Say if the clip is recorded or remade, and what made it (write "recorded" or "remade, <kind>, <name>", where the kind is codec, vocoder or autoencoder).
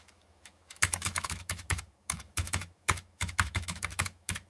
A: remade, autoencoder, DAC-VAE